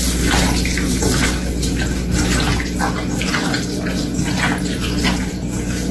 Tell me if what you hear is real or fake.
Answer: real